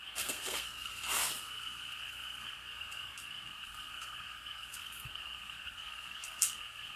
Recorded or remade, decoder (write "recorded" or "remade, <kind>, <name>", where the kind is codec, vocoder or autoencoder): remade, codec, SNAC